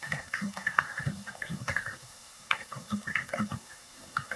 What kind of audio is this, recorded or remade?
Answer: remade